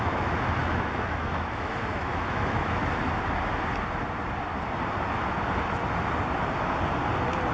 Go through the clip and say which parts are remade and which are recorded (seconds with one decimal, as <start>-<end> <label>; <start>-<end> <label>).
0.0-2.8 remade; 2.8-7.5 recorded